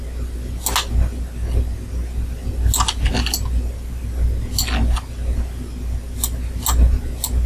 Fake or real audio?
real